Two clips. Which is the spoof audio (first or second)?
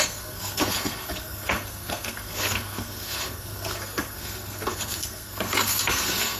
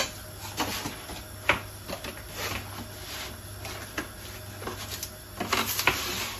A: first